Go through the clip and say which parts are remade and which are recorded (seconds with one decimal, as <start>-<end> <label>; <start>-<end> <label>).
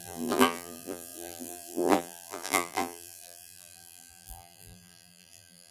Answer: 0.0-5.7 remade